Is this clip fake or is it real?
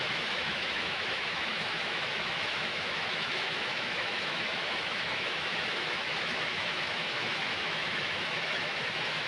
fake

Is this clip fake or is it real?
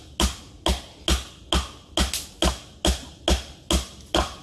real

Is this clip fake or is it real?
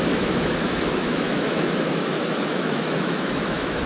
fake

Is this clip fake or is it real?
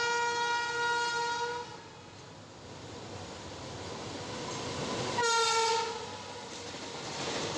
real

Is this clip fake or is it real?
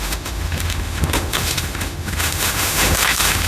fake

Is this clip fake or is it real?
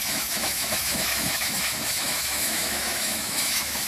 fake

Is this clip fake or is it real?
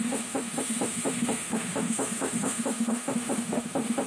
fake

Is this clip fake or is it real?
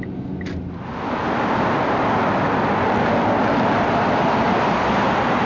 real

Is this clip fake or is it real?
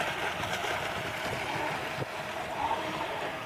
real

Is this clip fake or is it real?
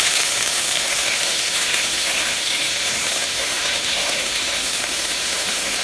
fake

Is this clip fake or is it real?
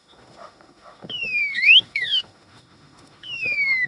fake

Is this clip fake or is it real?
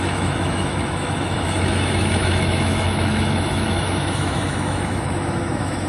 fake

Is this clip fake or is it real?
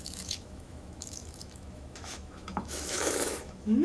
fake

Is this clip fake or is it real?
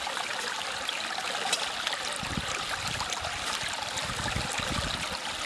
real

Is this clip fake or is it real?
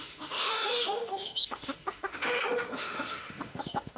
fake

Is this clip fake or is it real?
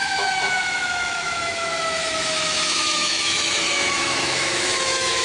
fake